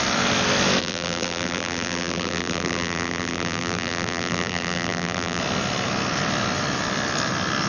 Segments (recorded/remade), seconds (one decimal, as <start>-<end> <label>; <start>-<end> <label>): 0.0-0.8 recorded; 0.8-5.4 remade; 5.4-7.7 recorded